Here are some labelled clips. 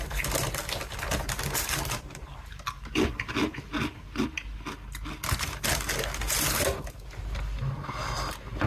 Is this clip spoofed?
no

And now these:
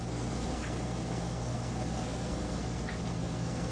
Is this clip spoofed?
yes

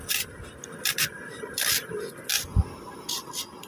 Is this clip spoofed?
no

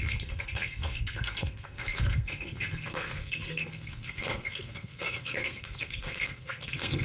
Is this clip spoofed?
yes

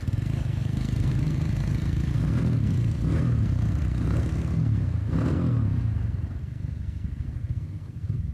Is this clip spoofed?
yes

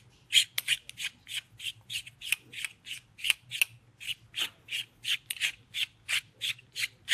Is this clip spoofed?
no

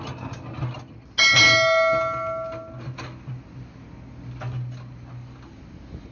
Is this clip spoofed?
no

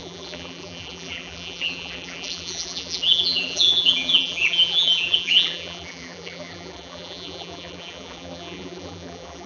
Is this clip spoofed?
yes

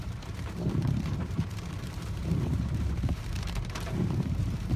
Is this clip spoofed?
yes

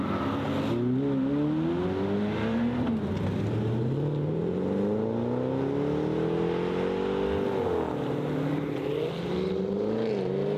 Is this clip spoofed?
no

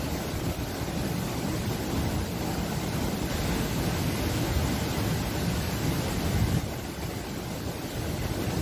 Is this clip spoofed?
no